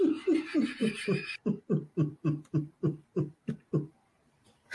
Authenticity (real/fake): fake